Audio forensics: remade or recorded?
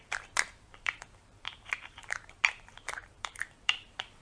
remade